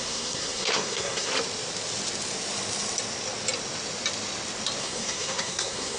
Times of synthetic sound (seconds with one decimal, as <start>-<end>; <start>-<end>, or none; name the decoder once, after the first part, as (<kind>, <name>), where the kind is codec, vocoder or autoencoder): 0.0-1.3 (codec, SNAC); 4.8-6.0